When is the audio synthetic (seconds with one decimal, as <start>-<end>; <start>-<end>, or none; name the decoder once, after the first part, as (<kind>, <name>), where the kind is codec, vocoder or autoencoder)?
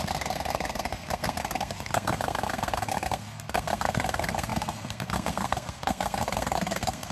0.0-7.1 (codec, SNAC)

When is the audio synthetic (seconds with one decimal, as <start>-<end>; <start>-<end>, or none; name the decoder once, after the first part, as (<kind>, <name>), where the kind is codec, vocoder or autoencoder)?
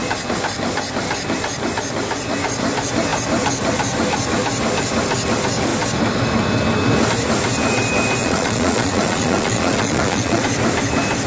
8.2-10.4 (vocoder, Vocos)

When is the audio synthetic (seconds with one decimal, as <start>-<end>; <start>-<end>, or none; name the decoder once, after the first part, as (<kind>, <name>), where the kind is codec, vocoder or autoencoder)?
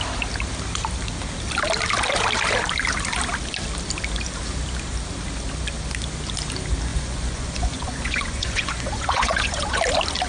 6.9-9.8 (vocoder, Vocos)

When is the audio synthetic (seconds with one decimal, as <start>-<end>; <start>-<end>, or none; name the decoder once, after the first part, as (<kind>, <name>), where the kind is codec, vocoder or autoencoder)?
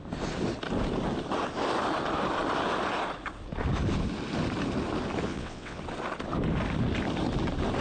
5.3-5.8 (vocoder, WaveNeXt)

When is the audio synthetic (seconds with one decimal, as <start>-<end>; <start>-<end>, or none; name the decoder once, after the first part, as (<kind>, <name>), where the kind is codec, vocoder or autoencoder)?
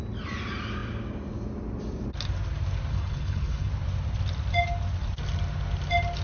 2.9-3.7 (codec, HILCodec)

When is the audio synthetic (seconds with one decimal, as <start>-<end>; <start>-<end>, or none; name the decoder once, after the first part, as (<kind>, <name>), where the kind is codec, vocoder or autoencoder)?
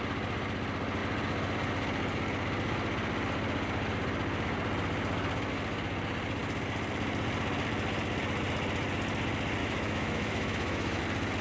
9.6-11.0 (autoencoder, DAC-VAE)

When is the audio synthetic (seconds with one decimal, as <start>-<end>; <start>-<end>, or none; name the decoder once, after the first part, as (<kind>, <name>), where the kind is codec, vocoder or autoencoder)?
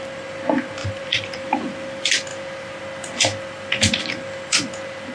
0.8-1.6 (vocoder, BigVGAN v2)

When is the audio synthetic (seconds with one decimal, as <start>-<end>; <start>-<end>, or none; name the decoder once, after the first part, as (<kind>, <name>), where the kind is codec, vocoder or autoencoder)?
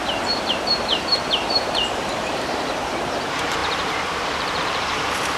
0.0-5.4 (vocoder, BigVGAN v2)